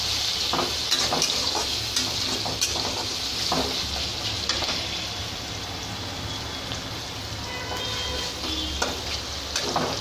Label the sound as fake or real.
real